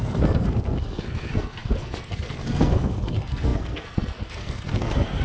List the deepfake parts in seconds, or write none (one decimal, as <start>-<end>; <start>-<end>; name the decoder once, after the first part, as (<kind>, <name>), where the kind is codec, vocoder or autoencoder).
0.0-5.2 (codec, SNAC)

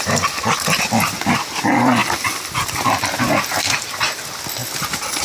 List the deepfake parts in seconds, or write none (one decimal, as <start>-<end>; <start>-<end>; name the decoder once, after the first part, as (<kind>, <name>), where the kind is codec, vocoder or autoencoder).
none

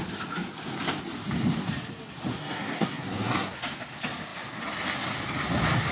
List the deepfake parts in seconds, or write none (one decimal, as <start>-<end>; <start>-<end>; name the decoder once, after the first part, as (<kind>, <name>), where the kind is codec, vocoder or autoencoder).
2.3-3.6 (codec, SNAC)

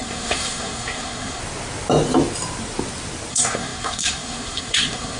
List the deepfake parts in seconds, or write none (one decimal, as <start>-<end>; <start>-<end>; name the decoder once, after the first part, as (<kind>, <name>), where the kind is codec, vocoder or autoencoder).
0.0-1.4 (codec, SNAC); 3.3-5.2

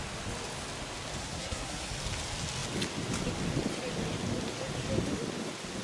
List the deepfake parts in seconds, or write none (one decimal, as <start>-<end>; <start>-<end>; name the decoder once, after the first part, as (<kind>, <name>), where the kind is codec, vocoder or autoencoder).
1.2-1.9 (codec, SNAC)

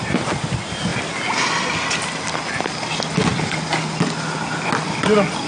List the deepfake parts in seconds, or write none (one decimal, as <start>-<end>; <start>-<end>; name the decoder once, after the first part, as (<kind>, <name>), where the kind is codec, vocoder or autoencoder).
none

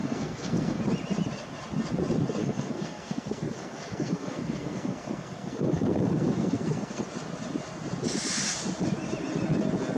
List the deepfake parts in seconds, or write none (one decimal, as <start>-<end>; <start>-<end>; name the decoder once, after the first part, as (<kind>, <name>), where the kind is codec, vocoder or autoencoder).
0.0-0.8 (codec, SNAC); 2.4-7.0